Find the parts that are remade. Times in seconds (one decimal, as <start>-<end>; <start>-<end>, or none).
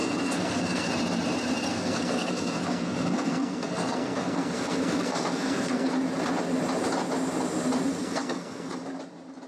0.0-0.9; 1.7-5.9; 8.0-8.7